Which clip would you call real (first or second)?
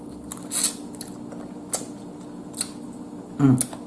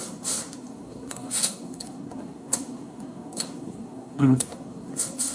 first